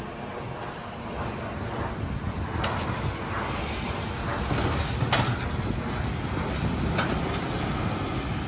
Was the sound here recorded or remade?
recorded